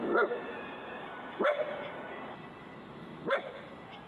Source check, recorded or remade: recorded